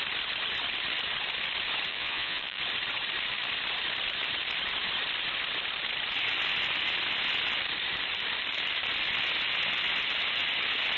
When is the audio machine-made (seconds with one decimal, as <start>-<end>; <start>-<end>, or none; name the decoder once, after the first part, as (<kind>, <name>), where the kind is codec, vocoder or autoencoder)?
1.9-2.6 (vocoder, Vocos)